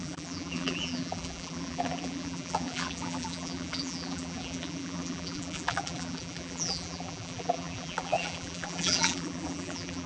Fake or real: fake